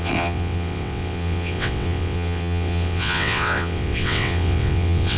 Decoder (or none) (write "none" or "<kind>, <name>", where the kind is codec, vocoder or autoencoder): vocoder, WaveNeXt